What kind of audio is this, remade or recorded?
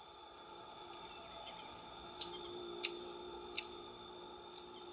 recorded